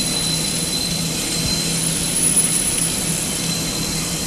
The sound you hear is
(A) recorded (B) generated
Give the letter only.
A